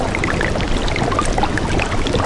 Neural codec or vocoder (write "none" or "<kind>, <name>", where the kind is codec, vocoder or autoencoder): none